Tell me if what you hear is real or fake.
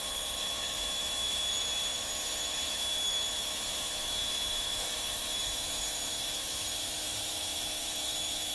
fake